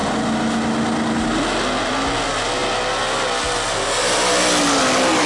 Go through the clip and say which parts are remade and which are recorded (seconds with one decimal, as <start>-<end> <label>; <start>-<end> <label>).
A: 0.0-5.3 recorded